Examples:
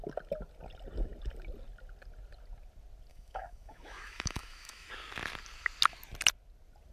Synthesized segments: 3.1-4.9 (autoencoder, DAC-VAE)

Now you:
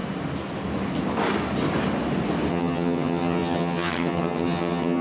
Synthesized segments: 2.5-5.0 (vocoder, HiFi-GAN)

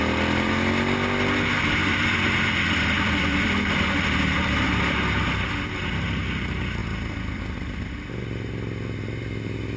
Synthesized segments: 1.8-5.2 (vocoder, BigVGAN v2); 6.8-7.4

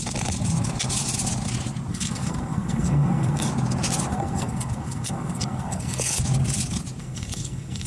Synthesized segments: 1.9-3.5 (codec, SNAC); 4.1-6.2; 7.0-7.9